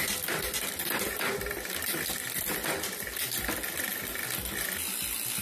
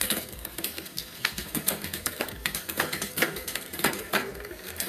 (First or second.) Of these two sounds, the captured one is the first